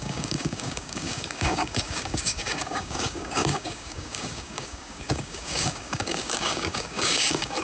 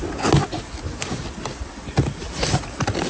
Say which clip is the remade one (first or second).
first